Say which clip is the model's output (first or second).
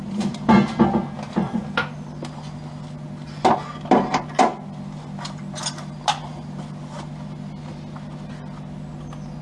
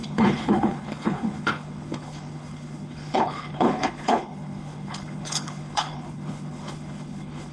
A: second